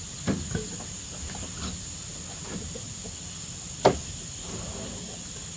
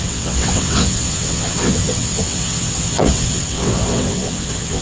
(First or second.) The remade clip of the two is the second